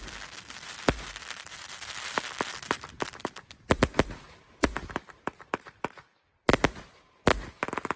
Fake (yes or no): no